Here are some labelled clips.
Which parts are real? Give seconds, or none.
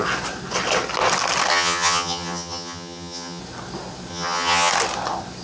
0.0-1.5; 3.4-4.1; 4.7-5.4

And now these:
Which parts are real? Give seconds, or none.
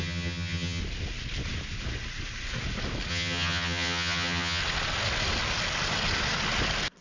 0.8-3.1; 4.6-7.0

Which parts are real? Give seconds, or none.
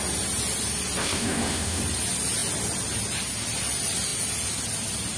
0.0-1.0; 1.8-5.2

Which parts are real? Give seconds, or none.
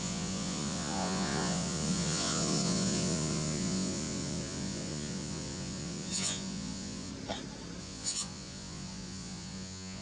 7.1-7.8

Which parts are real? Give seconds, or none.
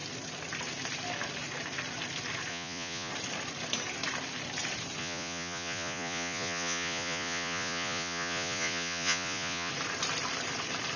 0.0-2.5; 3.1-5.0; 9.7-11.0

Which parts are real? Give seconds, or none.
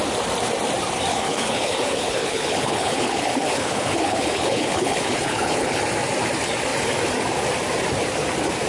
0.0-1.1; 5.8-8.7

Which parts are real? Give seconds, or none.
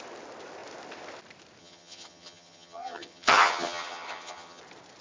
0.0-1.6; 4.6-5.0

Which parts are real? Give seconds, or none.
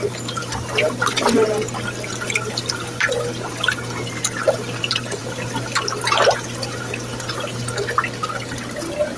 0.0-0.4; 4.8-5.2; 6.3-9.2